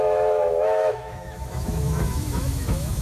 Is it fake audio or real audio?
fake